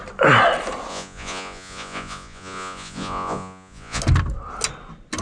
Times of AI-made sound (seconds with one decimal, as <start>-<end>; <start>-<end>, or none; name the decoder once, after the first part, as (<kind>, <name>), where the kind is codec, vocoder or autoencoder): 0.9-4.0 (vocoder, Vocos)